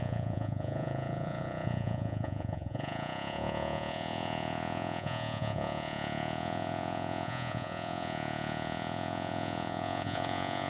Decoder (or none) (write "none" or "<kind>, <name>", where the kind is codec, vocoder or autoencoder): vocoder, Vocos